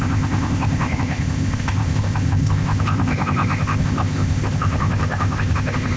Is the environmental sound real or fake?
fake